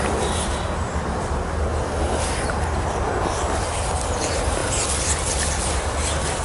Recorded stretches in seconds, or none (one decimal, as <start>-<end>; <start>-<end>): 0.0-6.4